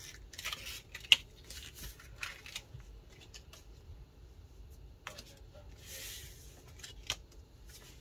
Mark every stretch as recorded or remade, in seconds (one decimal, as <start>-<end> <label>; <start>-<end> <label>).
0.0-2.2 recorded; 2.2-4.9 remade; 4.9-8.0 recorded